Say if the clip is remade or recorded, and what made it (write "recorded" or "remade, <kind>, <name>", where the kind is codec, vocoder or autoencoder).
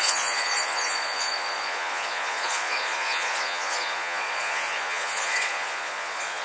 remade, vocoder, Vocos